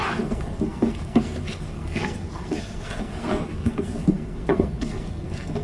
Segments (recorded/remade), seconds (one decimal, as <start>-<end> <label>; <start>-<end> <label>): 0.0-5.6 remade